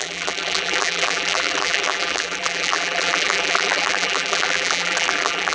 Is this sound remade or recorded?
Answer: remade